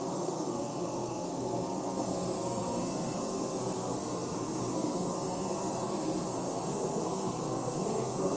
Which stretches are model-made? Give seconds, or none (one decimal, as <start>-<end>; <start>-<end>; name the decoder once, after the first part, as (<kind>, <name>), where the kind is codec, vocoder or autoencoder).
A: 0.0-8.4 (codec, SNAC)